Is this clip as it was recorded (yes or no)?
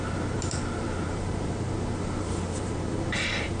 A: no